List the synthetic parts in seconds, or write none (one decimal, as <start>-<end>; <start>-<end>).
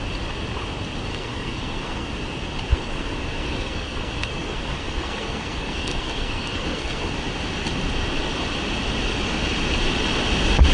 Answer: 1.1-2.1; 2.7-7.1